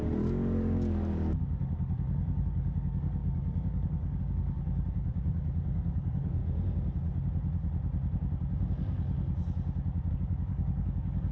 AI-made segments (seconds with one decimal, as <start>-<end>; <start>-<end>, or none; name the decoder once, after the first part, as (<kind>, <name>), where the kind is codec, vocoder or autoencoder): 0.0-6.4 (codec, DAC); 10.1-11.3

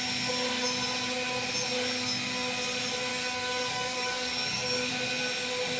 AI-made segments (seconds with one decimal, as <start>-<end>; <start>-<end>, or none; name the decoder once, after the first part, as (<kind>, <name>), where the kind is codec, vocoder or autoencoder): 3.1-4.9 (codec, DAC)

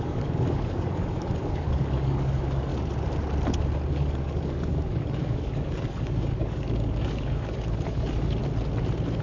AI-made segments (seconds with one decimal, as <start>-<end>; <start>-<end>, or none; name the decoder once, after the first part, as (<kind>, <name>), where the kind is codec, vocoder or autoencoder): 0.0-2.7 (codec, DAC); 3.9-8.4

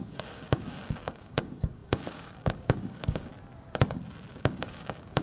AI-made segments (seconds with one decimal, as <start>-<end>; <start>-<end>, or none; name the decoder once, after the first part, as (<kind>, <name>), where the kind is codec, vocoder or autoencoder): 0.0-3.3 (codec, DAC); 4.3-5.2

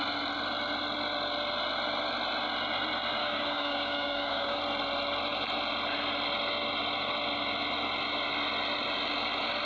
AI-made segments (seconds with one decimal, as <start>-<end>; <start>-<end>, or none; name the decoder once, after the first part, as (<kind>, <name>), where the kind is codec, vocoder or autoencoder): 3.2-4.6 (codec, DAC)

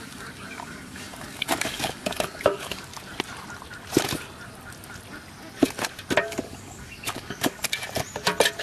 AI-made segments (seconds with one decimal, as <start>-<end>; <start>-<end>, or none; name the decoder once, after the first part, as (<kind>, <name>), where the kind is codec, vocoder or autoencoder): 0.0-2.9 (codec, DAC); 6.2-7.6